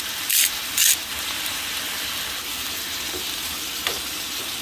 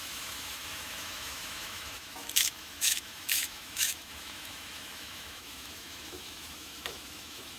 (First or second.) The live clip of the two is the first